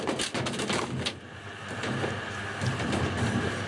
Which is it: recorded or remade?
recorded